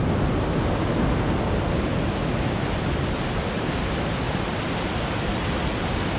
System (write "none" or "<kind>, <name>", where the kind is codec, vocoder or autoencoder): none